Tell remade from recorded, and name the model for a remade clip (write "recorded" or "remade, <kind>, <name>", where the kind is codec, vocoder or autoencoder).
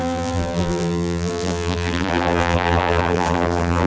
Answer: remade, vocoder, BigVGAN v2